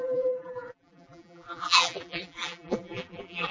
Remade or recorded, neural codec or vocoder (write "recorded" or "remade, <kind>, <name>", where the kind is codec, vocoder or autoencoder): remade, vocoder, BigVGAN v2